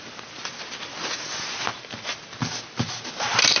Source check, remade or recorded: recorded